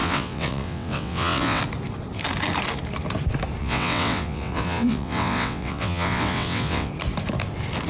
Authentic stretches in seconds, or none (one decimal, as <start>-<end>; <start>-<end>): 1.6-3.6; 6.9-7.9